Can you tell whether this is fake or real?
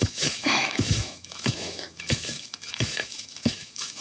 fake